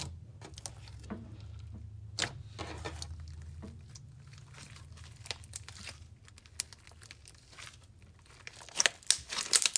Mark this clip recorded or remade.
recorded